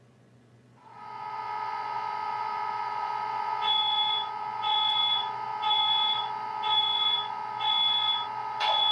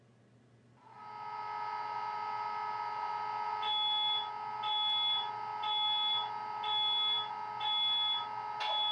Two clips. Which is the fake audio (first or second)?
first